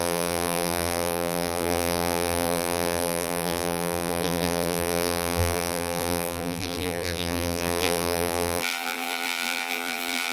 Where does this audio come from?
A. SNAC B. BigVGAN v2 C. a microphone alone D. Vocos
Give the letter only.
B